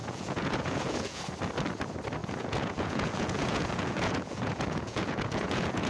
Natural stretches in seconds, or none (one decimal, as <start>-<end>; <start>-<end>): 1.2-2.2